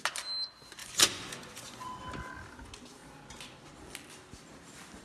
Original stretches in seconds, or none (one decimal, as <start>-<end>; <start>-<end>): 0.0-0.8; 2.0-5.0